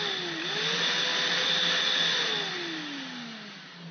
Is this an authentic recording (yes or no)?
yes